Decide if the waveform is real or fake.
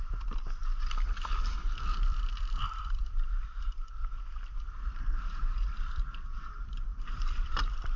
fake